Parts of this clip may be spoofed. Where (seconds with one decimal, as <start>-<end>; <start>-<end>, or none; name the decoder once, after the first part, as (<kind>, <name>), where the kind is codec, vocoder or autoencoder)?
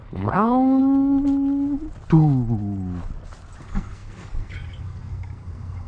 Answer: 0.0-0.8 (codec, SNAC); 3.6-5.9